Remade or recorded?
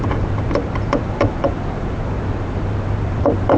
remade